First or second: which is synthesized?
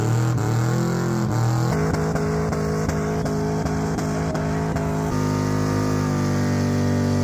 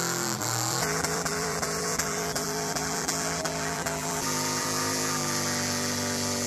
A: second